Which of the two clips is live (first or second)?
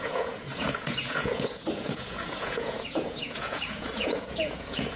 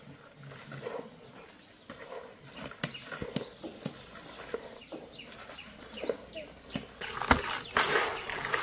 second